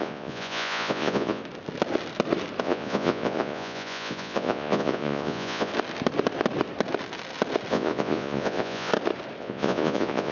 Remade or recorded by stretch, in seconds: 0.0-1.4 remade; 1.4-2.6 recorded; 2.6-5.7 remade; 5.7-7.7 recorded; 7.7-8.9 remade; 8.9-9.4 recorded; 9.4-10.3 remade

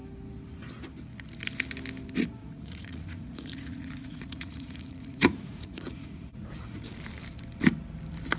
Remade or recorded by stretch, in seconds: 0.0-2.4 recorded; 2.4-7.0 remade; 7.0-8.4 recorded